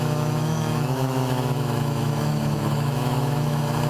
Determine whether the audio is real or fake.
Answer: fake